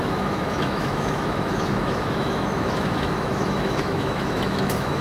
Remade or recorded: remade